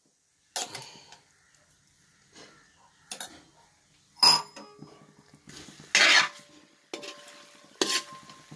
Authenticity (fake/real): real